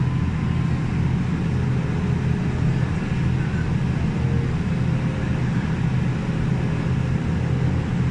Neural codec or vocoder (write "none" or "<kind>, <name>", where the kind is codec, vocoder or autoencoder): none